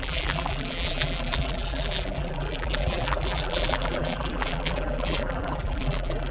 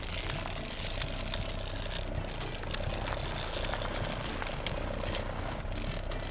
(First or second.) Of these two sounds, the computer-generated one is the first